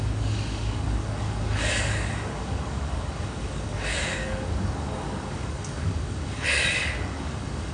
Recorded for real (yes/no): no